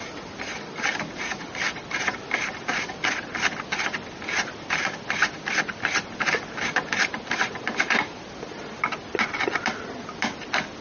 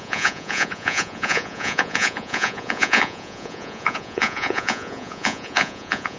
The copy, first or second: second